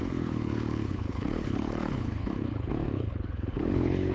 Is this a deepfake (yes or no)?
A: yes